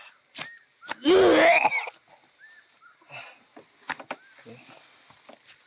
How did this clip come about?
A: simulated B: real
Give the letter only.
B